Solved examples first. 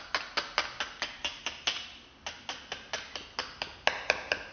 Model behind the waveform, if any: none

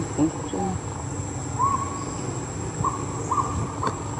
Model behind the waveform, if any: none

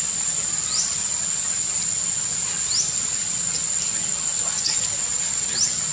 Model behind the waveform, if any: none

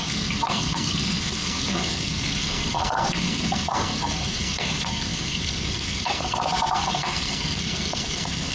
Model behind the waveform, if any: codec, SNAC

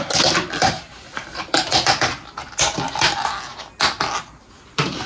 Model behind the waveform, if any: none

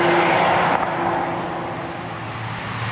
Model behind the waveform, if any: none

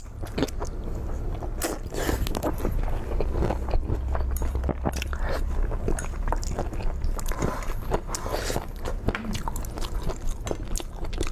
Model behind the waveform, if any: none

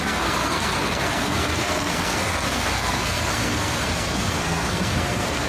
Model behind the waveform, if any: codec, SNAC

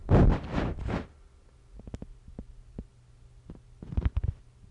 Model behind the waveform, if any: none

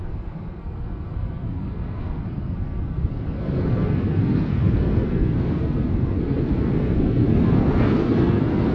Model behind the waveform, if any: codec, SNAC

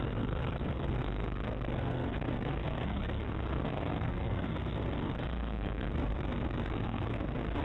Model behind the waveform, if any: codec, SNAC